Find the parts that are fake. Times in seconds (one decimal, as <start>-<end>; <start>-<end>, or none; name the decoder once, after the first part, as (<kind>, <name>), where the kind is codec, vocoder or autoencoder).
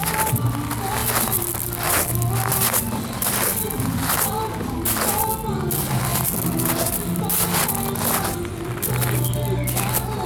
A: none